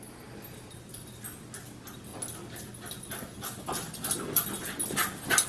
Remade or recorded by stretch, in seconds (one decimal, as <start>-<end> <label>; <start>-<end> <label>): 0.0-5.5 recorded